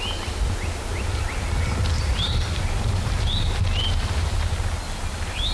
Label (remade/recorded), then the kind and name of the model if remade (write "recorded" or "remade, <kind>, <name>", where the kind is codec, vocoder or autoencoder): recorded